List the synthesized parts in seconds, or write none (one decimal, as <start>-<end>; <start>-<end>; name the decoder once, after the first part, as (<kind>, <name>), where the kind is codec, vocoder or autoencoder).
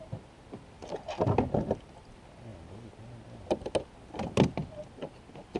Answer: none